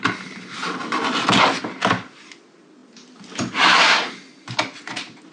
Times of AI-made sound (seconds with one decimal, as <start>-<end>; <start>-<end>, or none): none